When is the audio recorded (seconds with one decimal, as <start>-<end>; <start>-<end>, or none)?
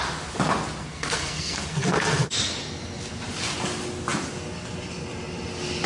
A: 0.0-0.8; 2.6-5.9